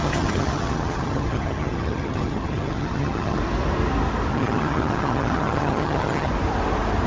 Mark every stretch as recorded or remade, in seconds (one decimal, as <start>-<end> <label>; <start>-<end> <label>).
0.0-3.4 remade; 3.4-4.3 recorded; 4.3-6.3 remade; 6.3-7.1 recorded